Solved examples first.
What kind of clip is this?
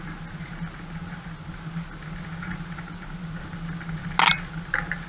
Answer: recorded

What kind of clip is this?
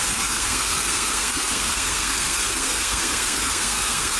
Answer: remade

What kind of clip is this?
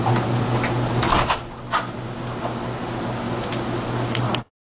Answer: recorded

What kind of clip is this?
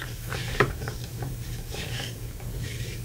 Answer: remade